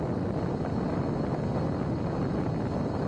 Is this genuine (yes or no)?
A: yes